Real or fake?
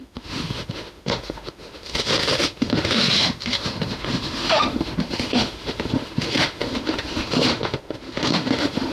fake